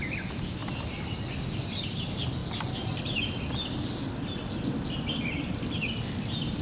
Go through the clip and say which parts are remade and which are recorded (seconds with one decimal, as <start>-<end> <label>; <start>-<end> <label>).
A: 0.0-6.6 recorded